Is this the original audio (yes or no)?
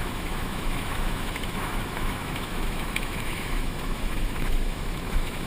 no